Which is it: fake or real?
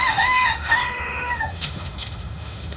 fake